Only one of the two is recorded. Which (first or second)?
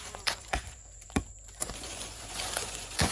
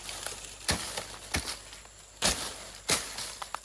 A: second